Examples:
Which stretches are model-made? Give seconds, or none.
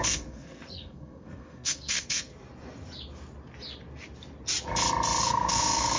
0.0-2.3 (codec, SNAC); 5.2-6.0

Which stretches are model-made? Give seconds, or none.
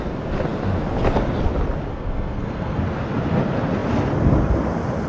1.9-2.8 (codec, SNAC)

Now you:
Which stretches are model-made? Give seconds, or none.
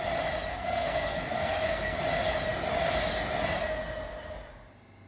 0.5-2.0 (codec, SNAC)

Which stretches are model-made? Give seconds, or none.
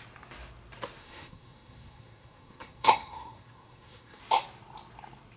1.0-4.2 (codec, SNAC)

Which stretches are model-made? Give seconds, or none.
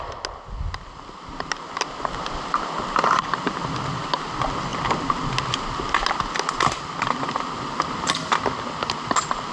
none